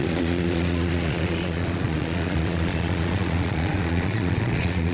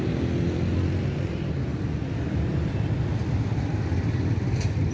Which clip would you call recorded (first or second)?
second